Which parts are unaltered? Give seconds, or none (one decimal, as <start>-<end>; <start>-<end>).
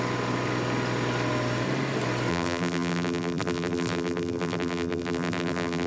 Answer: 0.0-2.3